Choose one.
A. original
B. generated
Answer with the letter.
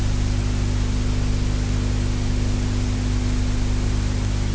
A